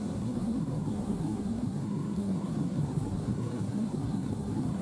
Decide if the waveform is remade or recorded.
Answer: remade